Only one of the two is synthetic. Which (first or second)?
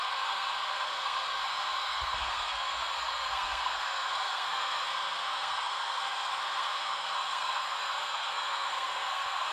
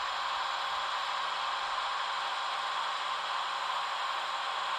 first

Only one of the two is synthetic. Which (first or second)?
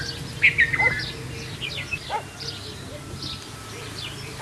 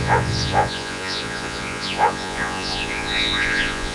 second